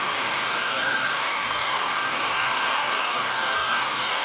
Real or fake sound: fake